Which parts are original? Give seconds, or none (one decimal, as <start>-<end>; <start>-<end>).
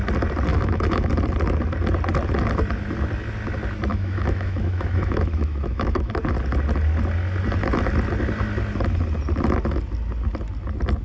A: 0.0-0.5; 1.1-3.9; 6.1-11.0